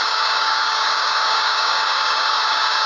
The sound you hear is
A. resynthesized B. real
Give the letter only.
A